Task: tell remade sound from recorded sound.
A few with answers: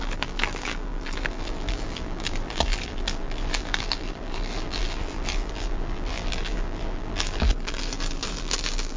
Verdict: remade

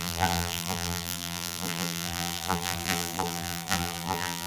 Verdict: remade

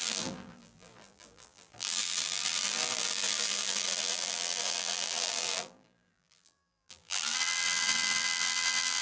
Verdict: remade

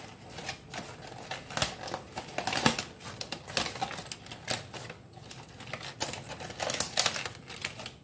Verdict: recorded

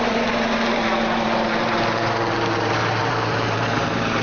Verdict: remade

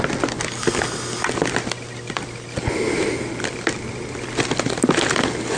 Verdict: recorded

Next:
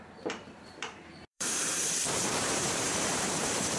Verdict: remade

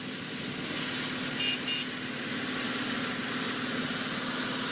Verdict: recorded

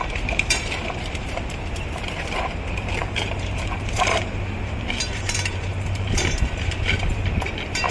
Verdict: remade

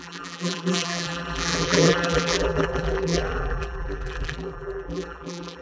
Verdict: remade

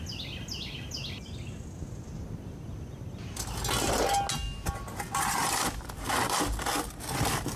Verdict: recorded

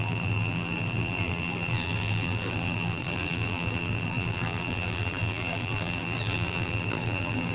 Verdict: remade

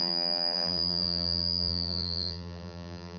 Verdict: remade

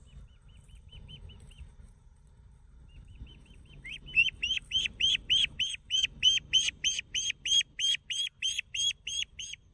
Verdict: remade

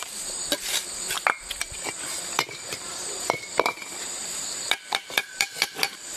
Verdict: remade